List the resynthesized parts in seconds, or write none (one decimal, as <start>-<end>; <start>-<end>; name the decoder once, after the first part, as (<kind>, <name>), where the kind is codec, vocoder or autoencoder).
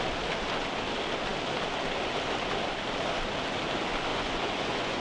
4.1-5.0 (vocoder, Vocos)